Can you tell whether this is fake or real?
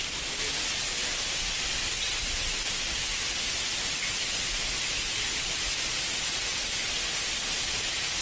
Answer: real